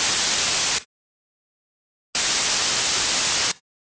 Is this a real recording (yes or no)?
yes